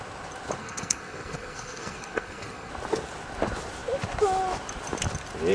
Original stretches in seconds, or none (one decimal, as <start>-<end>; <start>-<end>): 0.0-0.6; 2.7-5.5